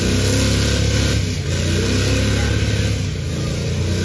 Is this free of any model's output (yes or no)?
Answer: yes